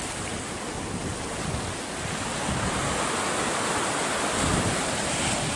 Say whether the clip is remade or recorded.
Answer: recorded